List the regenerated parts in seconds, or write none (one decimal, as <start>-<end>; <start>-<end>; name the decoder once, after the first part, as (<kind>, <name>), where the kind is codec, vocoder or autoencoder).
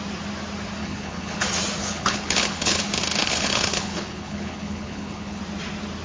0.8-1.4 (codec, HILCodec); 1.8-2.8; 3.2-5.4